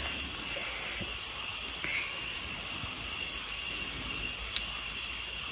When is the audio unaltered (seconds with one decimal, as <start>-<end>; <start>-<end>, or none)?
0.0-5.5